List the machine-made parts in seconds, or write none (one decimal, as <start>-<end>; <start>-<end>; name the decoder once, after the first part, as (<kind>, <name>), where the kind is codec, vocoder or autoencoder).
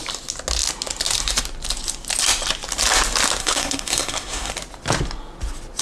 3.4-4.5 (codec, SNAC)